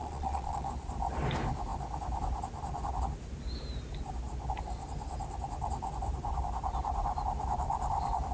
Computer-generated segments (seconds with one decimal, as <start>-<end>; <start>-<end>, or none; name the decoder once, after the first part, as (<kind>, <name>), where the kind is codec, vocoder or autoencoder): 0.0-0.7 (vocoder, Vocos)